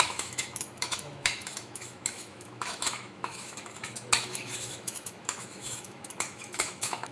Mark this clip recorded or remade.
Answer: remade